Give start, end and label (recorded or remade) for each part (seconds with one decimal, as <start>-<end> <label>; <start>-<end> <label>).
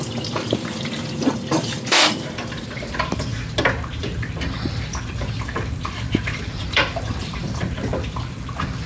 0.0-3.3 remade; 3.3-4.0 recorded; 4.0-8.9 remade